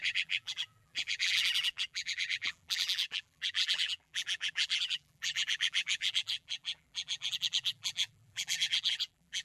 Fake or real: fake